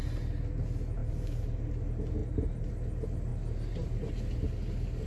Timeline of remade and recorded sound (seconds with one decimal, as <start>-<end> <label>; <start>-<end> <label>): 0.0-1.0 recorded; 1.0-1.7 remade; 1.7-2.2 recorded; 2.2-2.7 remade; 2.7-3.3 recorded; 3.3-4.1 remade; 4.1-5.1 recorded